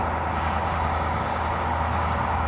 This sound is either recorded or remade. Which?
remade